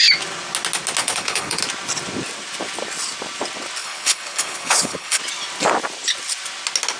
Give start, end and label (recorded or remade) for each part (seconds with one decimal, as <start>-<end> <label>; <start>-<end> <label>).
0.0-1.0 recorded; 1.0-1.6 remade; 1.6-3.8 recorded; 3.8-5.2 remade; 5.2-7.0 recorded